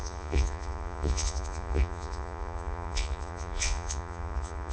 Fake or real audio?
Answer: fake